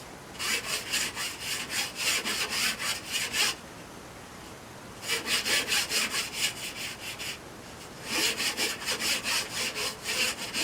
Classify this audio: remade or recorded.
recorded